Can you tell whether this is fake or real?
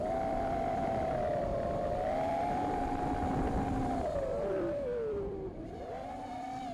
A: fake